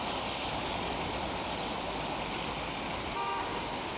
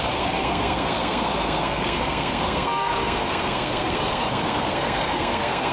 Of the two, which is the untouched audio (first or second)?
first